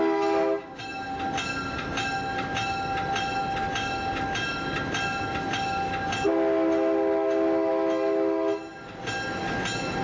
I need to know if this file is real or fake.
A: real